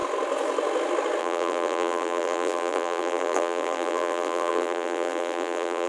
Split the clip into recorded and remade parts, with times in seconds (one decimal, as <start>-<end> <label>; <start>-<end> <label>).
0.0-1.2 recorded; 1.2-5.9 remade